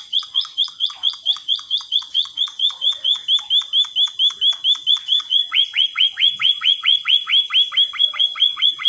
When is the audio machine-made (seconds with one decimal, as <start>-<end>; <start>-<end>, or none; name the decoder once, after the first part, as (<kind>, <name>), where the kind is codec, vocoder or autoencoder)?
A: 0.0-3.2 (vocoder, Vocos); 4.9-7.3; 8.0-8.9